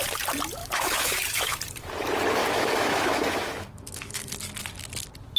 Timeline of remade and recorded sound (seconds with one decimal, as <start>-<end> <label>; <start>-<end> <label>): 0.0-0.6 recorded; 0.6-1.6 remade; 1.6-2.4 recorded; 2.4-4.3 remade; 4.3-5.4 recorded